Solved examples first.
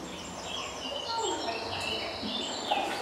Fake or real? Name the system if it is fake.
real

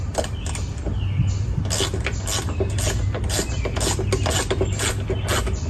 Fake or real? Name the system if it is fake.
real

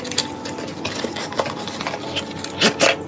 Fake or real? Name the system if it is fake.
real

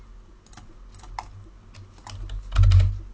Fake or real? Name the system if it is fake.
real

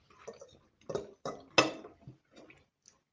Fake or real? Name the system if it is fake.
real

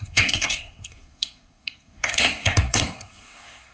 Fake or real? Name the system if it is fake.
fake, codec, SNAC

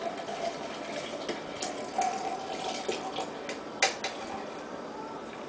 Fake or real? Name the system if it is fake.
real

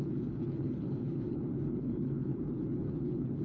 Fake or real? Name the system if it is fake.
fake, codec, HILCodec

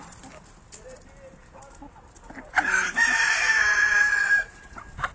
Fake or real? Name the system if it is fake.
real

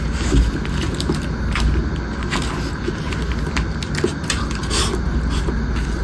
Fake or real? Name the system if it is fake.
real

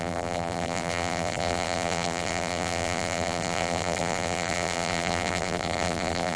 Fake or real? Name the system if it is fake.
fake, vocoder, BigVGAN v2